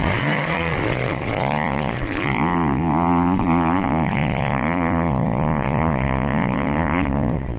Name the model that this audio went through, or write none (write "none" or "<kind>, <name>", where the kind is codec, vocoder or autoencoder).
vocoder, Vocos